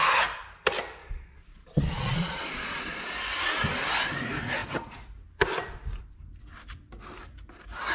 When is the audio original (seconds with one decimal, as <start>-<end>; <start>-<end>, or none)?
0.0-1.0; 3.1-7.9